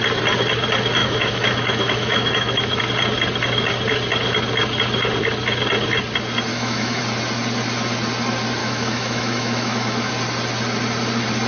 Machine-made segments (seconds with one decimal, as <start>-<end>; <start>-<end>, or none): 1.0-2.8; 6.5-7.0; 8.6-10.1